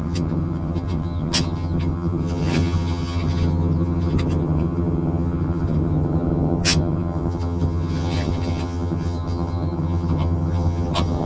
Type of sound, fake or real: fake